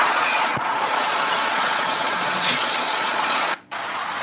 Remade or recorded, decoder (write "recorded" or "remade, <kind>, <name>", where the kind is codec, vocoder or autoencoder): remade, vocoder, Vocos